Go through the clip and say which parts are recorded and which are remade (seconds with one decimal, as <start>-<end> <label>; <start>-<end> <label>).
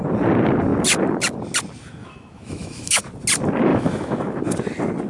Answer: 0.0-2.0 recorded; 2.0-3.0 remade; 3.0-3.7 recorded; 3.7-4.4 remade; 4.4-5.1 recorded